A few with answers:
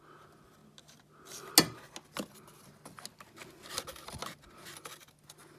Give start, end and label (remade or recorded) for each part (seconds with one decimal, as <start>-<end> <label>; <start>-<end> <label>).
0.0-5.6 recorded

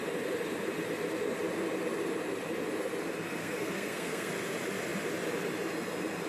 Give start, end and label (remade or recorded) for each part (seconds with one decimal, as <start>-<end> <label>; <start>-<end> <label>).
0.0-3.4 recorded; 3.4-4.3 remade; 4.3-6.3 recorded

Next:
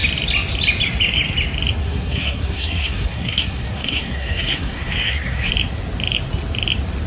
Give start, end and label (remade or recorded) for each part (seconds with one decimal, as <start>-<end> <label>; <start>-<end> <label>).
0.0-1.8 recorded; 1.8-5.5 remade; 5.5-7.1 recorded

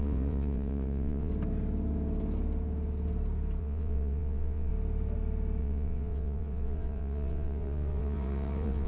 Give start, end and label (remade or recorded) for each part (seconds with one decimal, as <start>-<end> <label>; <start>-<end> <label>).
0.0-1.3 remade; 1.3-3.6 recorded; 3.6-4.7 remade; 4.7-5.6 recorded; 5.6-8.9 remade

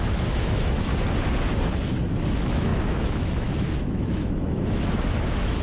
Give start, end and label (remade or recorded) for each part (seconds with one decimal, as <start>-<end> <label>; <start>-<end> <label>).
0.0-0.9 remade; 0.9-2.0 recorded; 2.0-5.6 remade

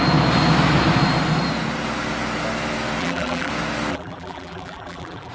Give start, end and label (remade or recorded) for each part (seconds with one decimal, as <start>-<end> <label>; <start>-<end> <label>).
0.0-3.0 recorded; 3.0-3.5 remade; 3.5-3.9 recorded; 3.9-5.3 remade

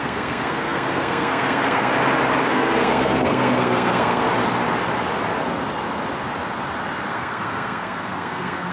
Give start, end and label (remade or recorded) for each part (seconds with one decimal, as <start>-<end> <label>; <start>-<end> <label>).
0.0-1.9 remade; 1.9-2.5 recorded; 2.5-4.2 remade; 4.2-7.1 recorded; 7.1-8.7 remade

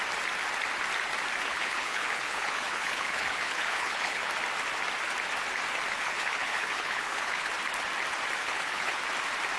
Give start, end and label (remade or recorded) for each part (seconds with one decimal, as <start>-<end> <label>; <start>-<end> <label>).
0.0-1.5 recorded; 1.5-4.3 remade; 4.3-5.9 recorded; 5.9-7.5 remade; 7.5-8.4 recorded; 8.4-9.0 remade; 9.0-9.6 recorded